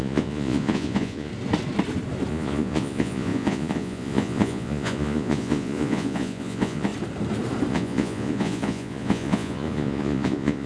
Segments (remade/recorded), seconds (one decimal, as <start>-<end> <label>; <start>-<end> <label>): 0.0-1.3 remade; 1.3-2.3 recorded; 2.3-6.9 remade; 6.9-7.7 recorded; 7.7-10.7 remade